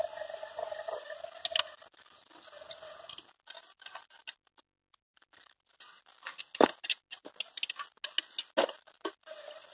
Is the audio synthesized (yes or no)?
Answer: no